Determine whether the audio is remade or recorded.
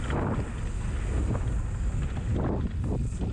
recorded